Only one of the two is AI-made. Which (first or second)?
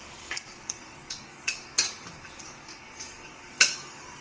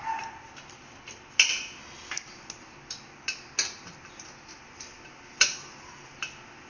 first